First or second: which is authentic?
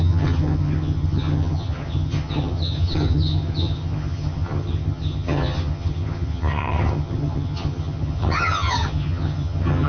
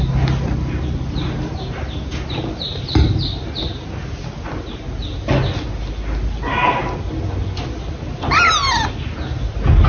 second